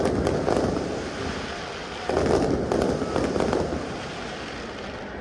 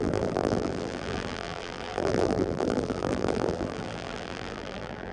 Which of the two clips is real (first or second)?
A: first